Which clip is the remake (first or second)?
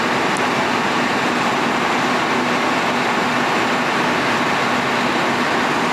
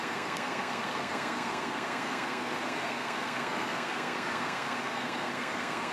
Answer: second